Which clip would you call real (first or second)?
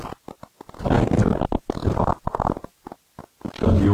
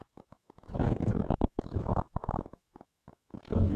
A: first